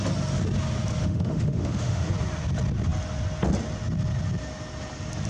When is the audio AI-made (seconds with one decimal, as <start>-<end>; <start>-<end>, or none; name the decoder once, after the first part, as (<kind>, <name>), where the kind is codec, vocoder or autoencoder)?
1.0-2.1 (autoencoder, DAC-VAE)